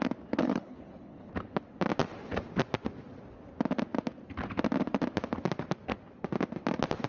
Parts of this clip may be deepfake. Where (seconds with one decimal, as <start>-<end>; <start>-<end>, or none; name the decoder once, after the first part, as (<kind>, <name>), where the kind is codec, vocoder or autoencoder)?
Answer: 0.4-1.3 (codec, HILCodec)

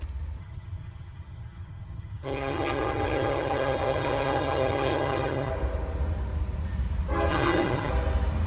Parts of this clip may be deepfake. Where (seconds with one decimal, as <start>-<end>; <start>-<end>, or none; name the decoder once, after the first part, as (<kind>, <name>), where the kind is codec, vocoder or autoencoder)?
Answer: 0.4-5.5 (vocoder, HiFi-GAN); 7.3-7.9

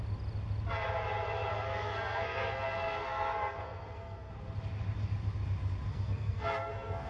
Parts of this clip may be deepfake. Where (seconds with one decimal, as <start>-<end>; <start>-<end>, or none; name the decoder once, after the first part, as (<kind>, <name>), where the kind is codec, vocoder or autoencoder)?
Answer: 1.5-4.3 (codec, SNAC); 5.9-7.1

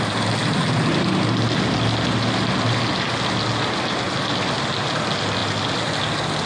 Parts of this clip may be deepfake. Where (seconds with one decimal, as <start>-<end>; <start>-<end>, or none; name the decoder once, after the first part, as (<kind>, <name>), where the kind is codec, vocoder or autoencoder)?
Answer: none

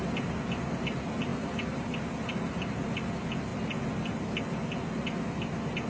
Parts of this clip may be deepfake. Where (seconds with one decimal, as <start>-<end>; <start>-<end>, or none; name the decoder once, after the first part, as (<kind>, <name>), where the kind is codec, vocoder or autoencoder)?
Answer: none

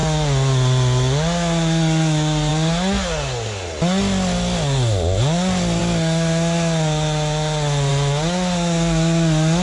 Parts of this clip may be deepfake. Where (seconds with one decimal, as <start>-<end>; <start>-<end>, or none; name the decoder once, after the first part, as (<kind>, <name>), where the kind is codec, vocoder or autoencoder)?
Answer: none